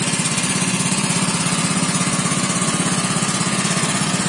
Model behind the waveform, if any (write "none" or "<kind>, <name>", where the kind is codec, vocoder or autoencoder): vocoder, Vocos